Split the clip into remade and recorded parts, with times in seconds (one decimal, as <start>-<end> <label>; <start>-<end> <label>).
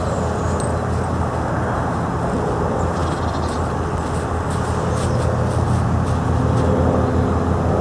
0.0-7.8 recorded